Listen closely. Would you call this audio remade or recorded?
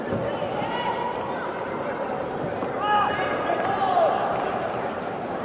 remade